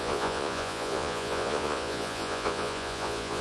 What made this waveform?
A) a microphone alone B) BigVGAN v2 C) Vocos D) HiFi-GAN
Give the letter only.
C